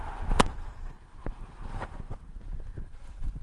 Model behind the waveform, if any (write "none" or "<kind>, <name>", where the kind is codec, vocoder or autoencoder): vocoder, BigVGAN v2